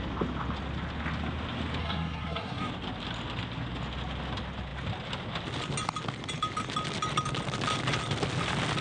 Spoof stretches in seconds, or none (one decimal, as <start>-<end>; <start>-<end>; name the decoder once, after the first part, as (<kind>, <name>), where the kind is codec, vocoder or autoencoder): 1.8-2.7 (codec, SNAC)